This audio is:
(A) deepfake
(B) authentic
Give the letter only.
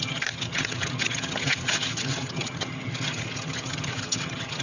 A